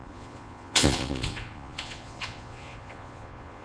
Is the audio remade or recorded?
remade